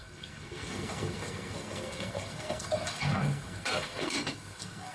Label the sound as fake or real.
fake